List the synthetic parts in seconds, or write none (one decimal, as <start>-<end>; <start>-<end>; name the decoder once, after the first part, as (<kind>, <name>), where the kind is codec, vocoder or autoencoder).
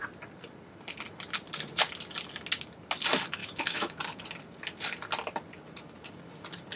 3.4-4.0 (autoencoder, DAC-VAE)